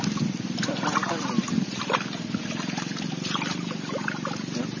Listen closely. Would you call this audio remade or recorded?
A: recorded